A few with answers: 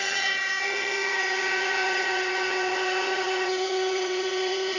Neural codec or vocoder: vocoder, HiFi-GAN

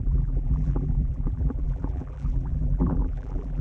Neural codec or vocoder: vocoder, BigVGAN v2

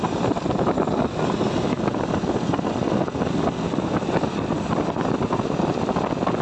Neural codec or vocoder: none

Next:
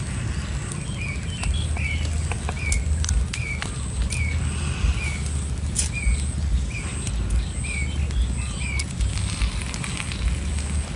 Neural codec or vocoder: none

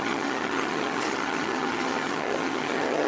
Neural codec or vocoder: vocoder, HiFi-GAN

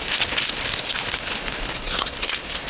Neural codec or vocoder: none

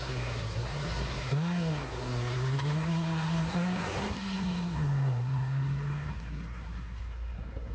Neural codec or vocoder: codec, SNAC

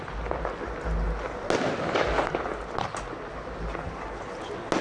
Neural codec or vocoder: none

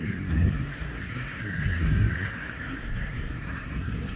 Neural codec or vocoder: codec, SNAC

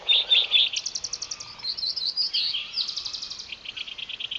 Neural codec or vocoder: none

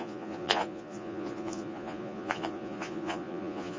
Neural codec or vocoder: vocoder, Vocos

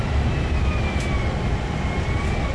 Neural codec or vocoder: none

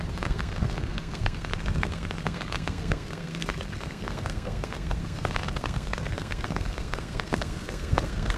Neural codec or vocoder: codec, SNAC